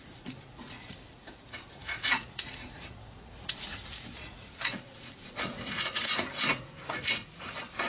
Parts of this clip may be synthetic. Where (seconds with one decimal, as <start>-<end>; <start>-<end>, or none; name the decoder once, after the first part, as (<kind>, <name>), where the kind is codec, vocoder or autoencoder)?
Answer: 0.0-7.9 (vocoder, Vocos)